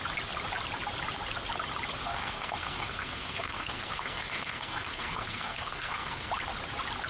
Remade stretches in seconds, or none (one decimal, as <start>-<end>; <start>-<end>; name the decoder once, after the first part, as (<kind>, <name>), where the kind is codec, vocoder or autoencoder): 2.0-6.3 (codec, SNAC)